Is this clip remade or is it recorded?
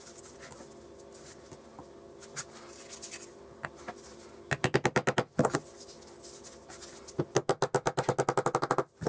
recorded